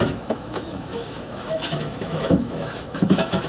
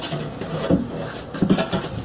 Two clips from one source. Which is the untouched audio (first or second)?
second